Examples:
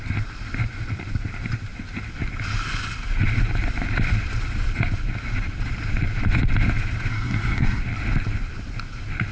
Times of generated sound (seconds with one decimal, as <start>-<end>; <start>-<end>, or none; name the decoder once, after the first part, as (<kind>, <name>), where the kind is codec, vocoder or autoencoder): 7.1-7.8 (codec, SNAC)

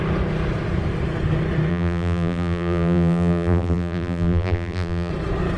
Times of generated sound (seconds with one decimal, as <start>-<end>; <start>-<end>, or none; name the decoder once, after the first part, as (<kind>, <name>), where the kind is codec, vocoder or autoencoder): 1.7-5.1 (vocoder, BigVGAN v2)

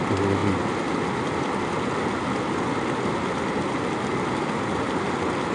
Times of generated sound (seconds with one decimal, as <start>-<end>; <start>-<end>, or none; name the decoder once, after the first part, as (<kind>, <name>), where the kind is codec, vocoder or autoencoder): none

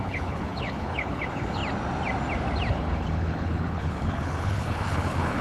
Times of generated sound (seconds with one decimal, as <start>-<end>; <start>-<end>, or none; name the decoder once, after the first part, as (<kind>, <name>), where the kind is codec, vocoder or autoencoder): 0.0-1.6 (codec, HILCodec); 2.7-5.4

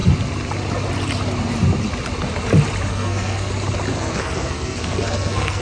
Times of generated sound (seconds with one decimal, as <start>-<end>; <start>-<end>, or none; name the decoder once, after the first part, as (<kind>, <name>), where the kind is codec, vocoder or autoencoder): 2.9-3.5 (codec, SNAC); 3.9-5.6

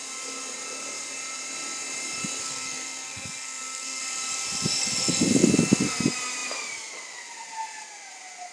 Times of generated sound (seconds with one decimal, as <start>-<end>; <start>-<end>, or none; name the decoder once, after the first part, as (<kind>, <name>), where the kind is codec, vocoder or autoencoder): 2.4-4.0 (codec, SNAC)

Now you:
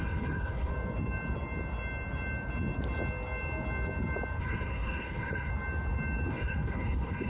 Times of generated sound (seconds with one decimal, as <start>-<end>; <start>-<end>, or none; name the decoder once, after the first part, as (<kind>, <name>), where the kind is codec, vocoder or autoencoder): 0.0-0.7 (codec, HILCodec); 4.4-5.5; 6.3-7.3